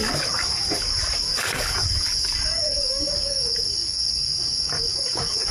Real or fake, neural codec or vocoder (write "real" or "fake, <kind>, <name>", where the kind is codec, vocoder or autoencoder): fake, codec, DAC